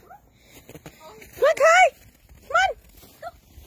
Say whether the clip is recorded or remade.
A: recorded